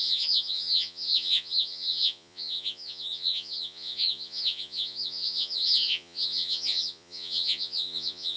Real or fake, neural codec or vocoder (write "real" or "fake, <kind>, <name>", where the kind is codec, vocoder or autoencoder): fake, vocoder, Vocos